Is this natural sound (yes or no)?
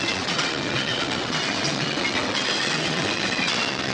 no